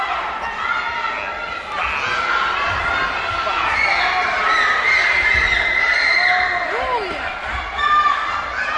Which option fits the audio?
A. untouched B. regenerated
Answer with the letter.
A